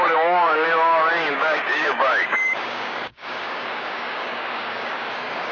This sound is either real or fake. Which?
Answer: fake